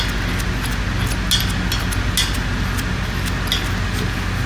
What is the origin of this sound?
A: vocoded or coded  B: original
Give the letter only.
B